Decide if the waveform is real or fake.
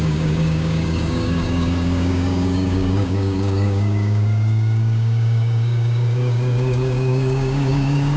fake